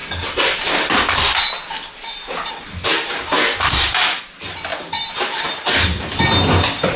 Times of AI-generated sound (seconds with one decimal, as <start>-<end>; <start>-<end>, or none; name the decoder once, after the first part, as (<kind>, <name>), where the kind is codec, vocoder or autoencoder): 0.0-4.2 (vocoder, BigVGAN v2); 4.7-5.8